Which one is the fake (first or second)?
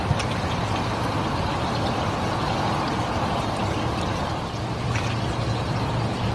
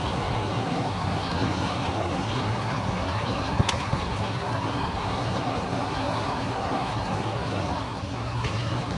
second